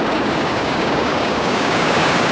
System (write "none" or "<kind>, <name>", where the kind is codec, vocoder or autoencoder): codec, DAC